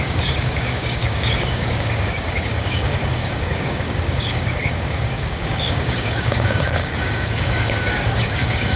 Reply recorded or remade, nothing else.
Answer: remade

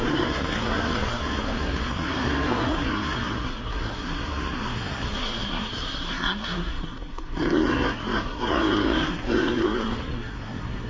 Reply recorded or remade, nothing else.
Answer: remade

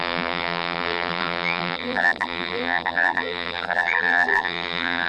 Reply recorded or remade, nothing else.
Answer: remade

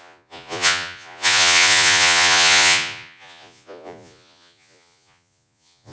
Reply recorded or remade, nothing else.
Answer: remade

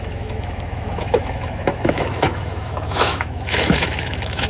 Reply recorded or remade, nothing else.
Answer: remade